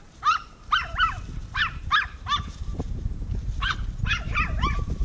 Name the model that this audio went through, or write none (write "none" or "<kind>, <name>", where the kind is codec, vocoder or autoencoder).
vocoder, BigVGAN v2